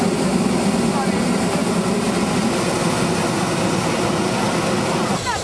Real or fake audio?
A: real